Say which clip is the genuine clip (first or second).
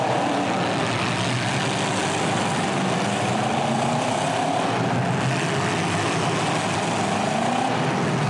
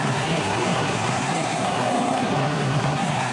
first